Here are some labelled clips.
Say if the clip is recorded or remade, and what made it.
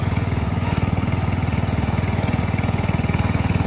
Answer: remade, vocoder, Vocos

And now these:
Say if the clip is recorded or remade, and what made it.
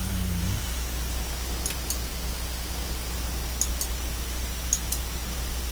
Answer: recorded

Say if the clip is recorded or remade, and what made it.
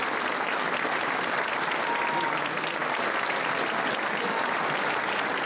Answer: recorded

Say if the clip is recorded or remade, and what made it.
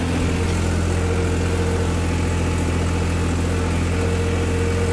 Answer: recorded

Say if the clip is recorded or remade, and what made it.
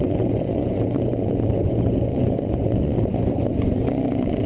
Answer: remade, vocoder, Vocos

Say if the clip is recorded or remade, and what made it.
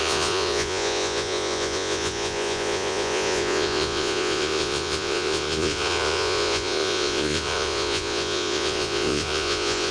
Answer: remade, vocoder, Vocos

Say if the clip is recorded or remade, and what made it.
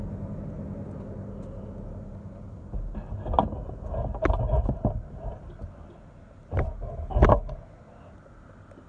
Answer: recorded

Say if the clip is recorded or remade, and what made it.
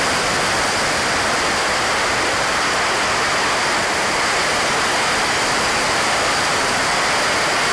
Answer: recorded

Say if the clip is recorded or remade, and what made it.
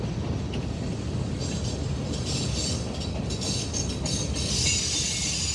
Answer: recorded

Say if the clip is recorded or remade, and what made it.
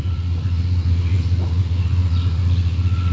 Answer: remade, vocoder, Vocos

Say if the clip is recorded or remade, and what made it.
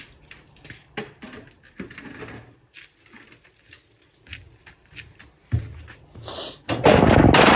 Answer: recorded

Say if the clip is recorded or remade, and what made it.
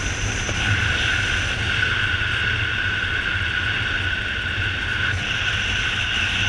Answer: recorded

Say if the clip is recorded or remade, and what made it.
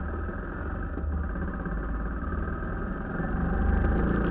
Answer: recorded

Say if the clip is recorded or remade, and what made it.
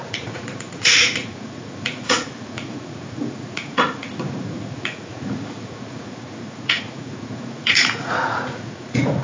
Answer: remade, vocoder, Vocos